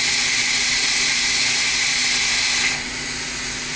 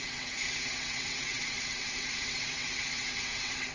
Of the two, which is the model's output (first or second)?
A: second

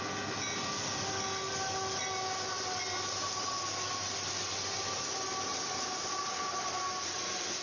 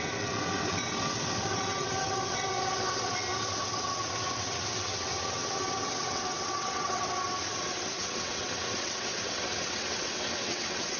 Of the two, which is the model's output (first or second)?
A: second